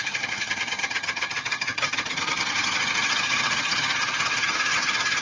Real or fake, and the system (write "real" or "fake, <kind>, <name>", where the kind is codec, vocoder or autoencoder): fake, vocoder, HiFi-GAN